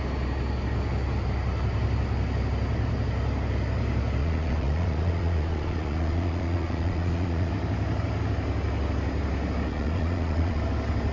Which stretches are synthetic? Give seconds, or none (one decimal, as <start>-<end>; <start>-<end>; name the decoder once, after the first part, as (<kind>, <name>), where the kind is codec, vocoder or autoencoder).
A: 4.2-7.5 (vocoder, Vocos); 9.7-10.6